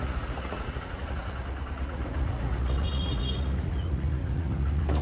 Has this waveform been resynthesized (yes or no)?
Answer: yes